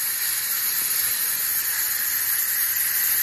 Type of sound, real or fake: fake